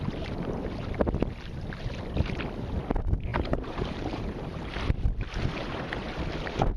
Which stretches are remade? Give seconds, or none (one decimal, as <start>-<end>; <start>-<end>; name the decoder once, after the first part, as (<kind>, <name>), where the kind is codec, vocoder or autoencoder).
3.3-4.6 (vocoder, BigVGAN v2); 5.6-6.2